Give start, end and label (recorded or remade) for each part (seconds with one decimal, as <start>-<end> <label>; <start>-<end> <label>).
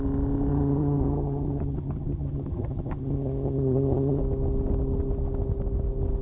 0.0-0.5 recorded; 0.5-4.2 remade; 4.2-6.2 recorded